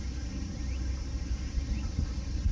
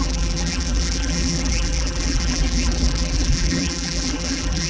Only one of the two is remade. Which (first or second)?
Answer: second